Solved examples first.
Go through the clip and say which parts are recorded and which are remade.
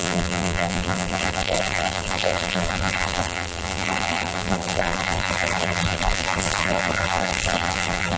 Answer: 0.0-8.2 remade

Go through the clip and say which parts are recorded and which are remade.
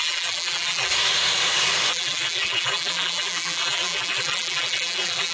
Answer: 0.0-0.9 remade; 0.9-1.9 recorded; 1.9-5.3 remade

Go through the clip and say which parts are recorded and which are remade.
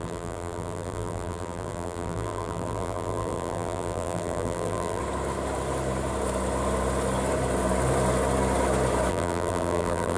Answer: 0.0-5.0 remade; 5.0-9.1 recorded; 9.1-10.2 remade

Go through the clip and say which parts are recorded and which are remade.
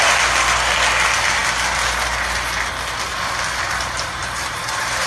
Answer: 0.0-3.1 recorded; 3.1-5.1 remade